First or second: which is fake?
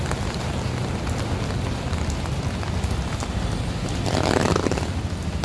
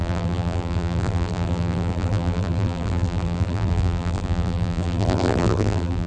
second